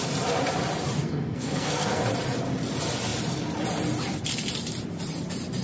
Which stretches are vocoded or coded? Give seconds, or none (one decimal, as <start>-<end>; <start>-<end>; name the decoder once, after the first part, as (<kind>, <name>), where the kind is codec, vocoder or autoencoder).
1.0-2.0 (codec, SNAC)